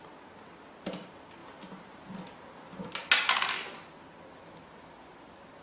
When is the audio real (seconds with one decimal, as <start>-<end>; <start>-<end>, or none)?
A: 0.0-5.6